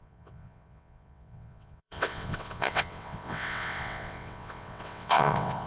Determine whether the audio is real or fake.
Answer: fake